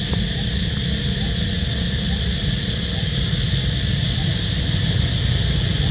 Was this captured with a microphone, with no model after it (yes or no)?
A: yes